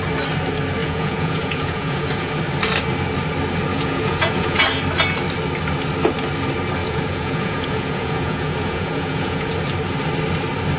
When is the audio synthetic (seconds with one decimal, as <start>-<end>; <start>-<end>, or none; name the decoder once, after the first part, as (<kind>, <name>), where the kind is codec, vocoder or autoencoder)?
0.8-2.3 (vocoder, Vocos); 3.7-4.6; 6.8-9.5